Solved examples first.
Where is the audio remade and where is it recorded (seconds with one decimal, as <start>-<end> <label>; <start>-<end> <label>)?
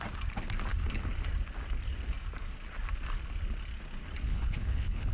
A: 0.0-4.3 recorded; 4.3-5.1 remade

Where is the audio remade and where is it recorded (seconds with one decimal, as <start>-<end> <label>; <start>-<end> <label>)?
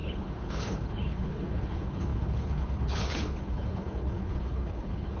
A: 0.0-5.2 remade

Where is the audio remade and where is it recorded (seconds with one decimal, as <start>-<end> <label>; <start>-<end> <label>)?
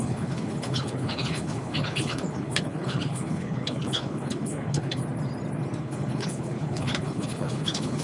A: 0.0-5.0 remade; 5.0-5.8 recorded; 5.8-8.0 remade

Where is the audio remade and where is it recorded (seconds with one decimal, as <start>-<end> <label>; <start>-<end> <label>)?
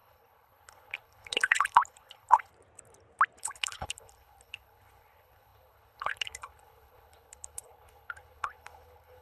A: 0.0-2.5 remade; 2.5-3.4 recorded; 3.4-9.2 remade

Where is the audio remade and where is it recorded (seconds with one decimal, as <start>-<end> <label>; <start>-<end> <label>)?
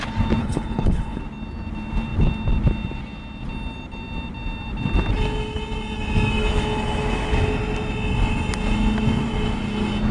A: 0.0-0.4 recorded; 0.4-1.2 remade; 1.2-10.1 recorded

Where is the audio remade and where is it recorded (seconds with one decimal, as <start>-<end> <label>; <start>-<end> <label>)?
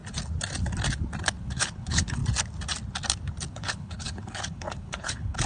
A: 0.0-1.4 recorded; 1.4-2.2 remade; 2.2-3.5 recorded; 3.5-5.5 remade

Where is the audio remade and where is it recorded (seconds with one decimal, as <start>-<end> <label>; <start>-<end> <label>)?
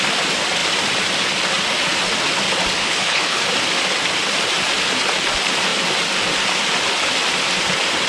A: 0.0-2.8 recorded; 2.8-3.4 remade; 3.4-8.1 recorded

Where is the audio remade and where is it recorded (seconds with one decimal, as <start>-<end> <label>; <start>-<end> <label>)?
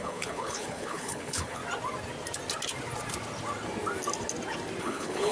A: 0.0-1.6 remade; 1.6-4.8 recorded; 4.8-5.3 remade